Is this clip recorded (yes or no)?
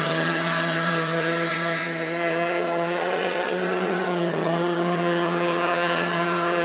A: no